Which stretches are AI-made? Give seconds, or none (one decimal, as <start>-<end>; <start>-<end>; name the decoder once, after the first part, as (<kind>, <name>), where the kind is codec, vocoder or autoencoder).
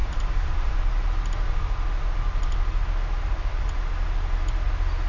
0.0-0.8 (vocoder, BigVGAN v2)